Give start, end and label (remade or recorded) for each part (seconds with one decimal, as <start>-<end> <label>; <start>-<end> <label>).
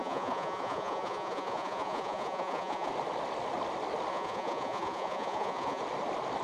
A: 0.0-2.9 remade; 2.9-4.1 recorded; 4.1-5.8 remade; 5.8-6.4 recorded